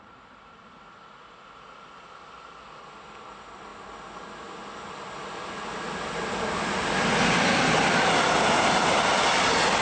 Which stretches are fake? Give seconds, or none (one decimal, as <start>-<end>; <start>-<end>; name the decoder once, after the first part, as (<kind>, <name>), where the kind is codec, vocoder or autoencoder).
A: none